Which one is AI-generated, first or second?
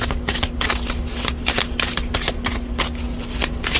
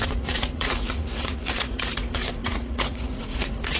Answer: second